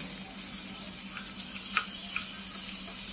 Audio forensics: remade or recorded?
recorded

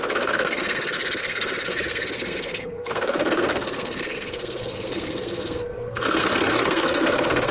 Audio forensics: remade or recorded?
remade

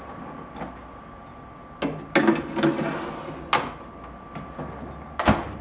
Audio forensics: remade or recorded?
recorded